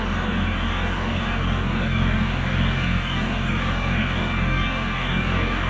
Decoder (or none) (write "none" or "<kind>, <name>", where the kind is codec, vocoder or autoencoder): codec, DAC